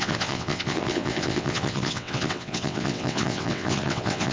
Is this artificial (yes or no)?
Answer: yes